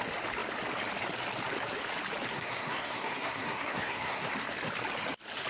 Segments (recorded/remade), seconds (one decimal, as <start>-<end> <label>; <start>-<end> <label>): 0.0-2.3 recorded; 2.3-4.3 remade; 4.3-5.5 recorded